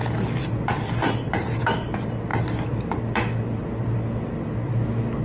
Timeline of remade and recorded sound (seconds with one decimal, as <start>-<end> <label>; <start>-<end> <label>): 0.0-1.6 remade; 1.6-2.3 recorded; 2.3-4.3 remade; 4.3-5.2 recorded